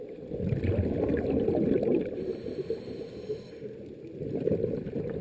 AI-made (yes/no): no